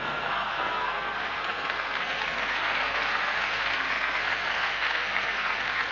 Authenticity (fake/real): fake